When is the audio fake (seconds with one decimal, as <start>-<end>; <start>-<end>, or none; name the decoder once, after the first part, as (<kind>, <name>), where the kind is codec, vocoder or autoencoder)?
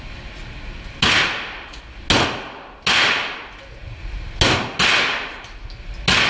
none